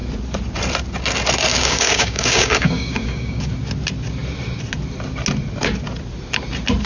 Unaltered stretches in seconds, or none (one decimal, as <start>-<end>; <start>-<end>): 0.0-1.5; 3.5-6.9